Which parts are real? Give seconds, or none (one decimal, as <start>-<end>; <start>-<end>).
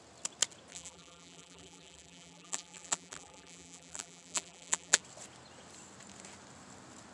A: 0.0-0.7; 5.0-7.1